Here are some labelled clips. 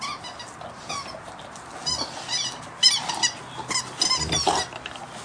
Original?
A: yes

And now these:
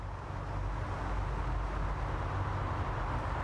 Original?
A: yes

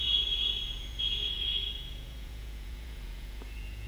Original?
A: no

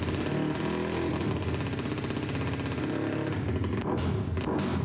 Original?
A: yes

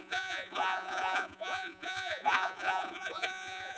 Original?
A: no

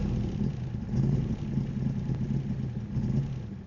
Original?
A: yes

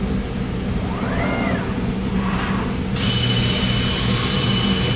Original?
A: yes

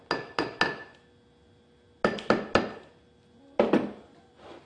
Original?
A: yes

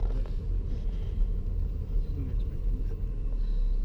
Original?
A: yes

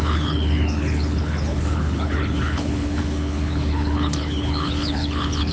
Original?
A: no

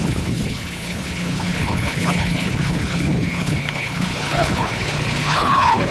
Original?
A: no